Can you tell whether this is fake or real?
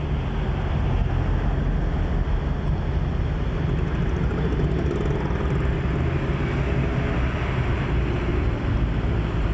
real